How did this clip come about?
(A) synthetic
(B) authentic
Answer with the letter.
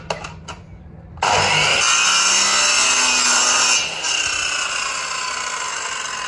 B